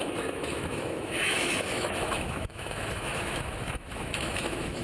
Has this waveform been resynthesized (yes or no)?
yes